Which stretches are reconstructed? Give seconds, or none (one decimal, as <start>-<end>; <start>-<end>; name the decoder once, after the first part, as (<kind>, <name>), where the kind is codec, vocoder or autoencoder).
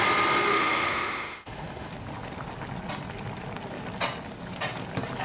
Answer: 0.5-1.9 (autoencoder, DAC-VAE)